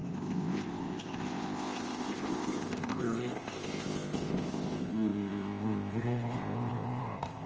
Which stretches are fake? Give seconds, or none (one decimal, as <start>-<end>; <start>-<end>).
0.0-7.5